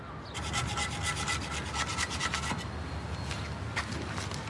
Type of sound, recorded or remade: recorded